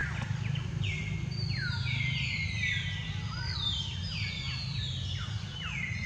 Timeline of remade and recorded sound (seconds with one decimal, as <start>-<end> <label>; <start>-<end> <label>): 0.0-2.2 remade; 2.2-6.1 recorded